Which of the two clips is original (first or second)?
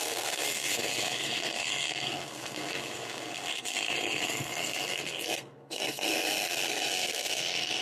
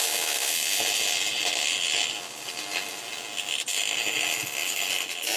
second